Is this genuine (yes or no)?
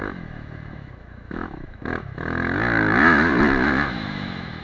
no